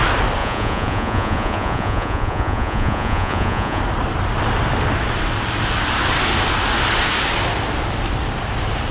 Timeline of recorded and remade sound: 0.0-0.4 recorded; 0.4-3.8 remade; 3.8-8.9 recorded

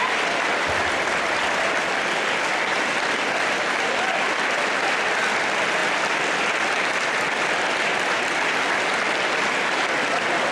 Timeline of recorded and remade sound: 0.0-10.5 recorded

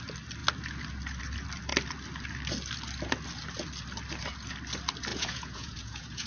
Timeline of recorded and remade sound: 0.0-5.1 recorded; 5.1-6.3 remade

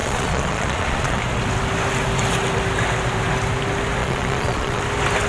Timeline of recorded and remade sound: 0.0-1.2 remade; 1.2-4.0 recorded; 4.0-4.8 remade; 4.8-5.3 recorded